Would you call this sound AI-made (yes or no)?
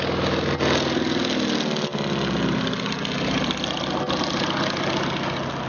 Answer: no